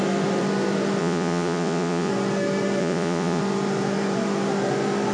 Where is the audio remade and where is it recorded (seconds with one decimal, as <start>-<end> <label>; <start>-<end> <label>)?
0.0-1.0 recorded; 1.0-2.1 remade; 2.1-2.8 recorded; 2.8-3.4 remade; 3.4-5.1 recorded